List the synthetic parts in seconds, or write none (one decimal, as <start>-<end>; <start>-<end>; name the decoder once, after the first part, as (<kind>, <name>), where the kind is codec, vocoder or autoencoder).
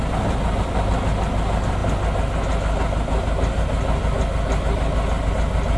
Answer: none